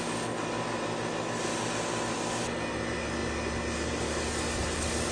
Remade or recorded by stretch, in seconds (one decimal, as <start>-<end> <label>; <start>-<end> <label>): 0.0-5.1 recorded